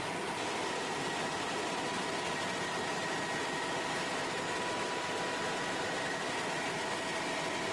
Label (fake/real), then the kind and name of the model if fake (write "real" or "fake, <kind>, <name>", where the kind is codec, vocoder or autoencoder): real